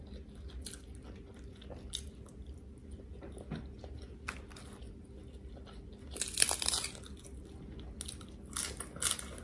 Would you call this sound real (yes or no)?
yes